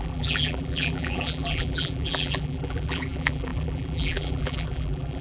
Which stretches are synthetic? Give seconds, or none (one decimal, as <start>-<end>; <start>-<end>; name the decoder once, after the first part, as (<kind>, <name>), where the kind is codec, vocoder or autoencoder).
0.0-5.2 (vocoder, BigVGAN v2)